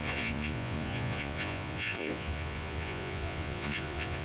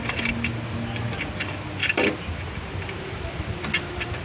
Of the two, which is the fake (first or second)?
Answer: first